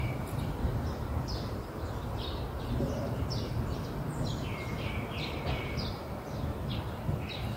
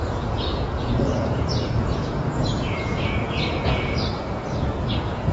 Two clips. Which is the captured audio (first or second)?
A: first